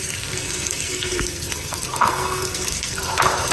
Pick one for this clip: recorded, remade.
remade